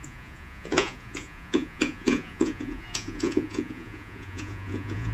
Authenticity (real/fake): fake